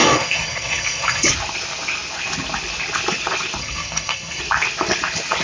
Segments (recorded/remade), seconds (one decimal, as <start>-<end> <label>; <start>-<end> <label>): 0.0-1.3 remade; 1.3-3.6 recorded; 3.6-4.4 remade; 4.4-5.4 recorded